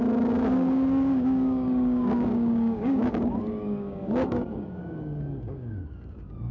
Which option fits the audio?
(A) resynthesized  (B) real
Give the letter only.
A